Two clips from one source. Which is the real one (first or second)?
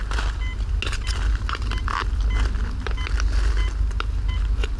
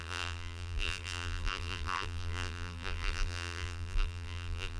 first